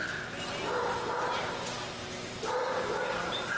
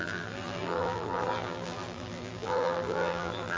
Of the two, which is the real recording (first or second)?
first